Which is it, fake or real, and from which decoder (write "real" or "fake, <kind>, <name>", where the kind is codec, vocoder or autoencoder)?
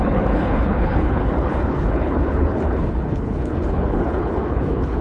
fake, codec, HILCodec